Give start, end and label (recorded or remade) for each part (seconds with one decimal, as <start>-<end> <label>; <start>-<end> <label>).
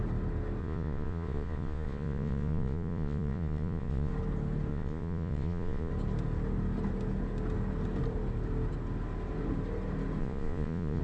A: 0.0-0.6 recorded; 0.6-4.1 remade; 4.1-4.7 recorded; 4.7-5.9 remade; 5.9-10.2 recorded; 10.2-11.0 remade